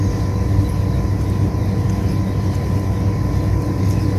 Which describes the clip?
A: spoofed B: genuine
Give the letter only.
B